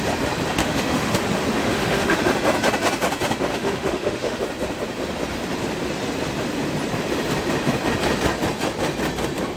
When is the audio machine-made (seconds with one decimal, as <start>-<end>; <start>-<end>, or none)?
0.6-1.2; 1.6-2.2; 3.5-4.4